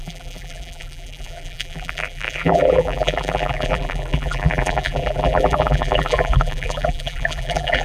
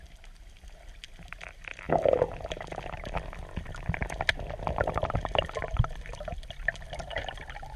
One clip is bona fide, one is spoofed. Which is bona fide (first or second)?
second